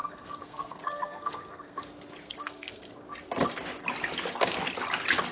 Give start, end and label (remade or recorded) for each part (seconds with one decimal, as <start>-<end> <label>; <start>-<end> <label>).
0.0-1.8 remade; 1.8-2.2 recorded; 2.2-2.9 remade; 2.9-5.3 recorded